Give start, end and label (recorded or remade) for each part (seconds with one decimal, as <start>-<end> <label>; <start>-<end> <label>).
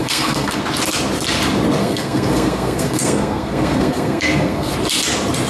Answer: 0.0-0.6 remade; 0.6-1.8 recorded; 1.8-4.7 remade; 4.7-5.5 recorded